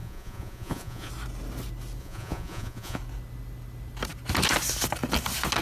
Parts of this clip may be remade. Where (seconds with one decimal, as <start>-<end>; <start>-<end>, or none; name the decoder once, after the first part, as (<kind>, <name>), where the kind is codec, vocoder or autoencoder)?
0.0-1.1 (vocoder, Vocos); 2.0-3.0